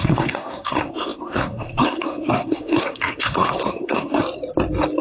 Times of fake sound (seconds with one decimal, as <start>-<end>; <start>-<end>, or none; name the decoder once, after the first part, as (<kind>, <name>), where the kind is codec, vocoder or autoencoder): 0.0-4.2 (codec, SNAC)